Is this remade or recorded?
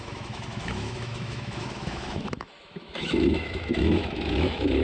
remade